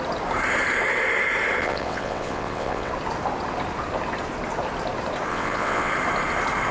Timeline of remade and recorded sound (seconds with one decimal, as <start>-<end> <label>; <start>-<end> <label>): 0.0-1.6 recorded; 1.6-2.9 remade; 2.9-5.3 recorded; 5.3-5.9 remade; 5.9-6.7 recorded